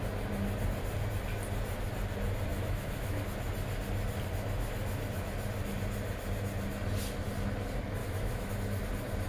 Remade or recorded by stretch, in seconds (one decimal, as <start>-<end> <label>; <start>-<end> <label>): 0.0-2.5 recorded; 2.5-3.2 remade; 3.2-8.0 recorded; 8.0-8.5 remade; 8.5-9.3 recorded